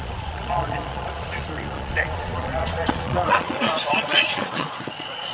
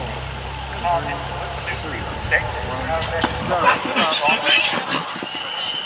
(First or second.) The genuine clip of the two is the second